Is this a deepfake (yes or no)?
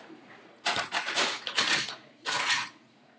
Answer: yes